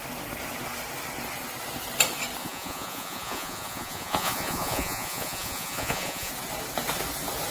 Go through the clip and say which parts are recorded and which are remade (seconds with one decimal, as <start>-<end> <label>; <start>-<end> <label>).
0.0-2.4 recorded; 2.4-6.3 remade; 6.3-7.5 recorded